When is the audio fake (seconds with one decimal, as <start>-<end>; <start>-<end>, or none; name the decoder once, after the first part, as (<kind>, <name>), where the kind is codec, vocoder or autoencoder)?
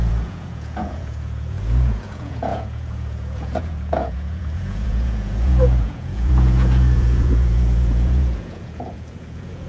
0.0-9.7 (vocoder, Vocos)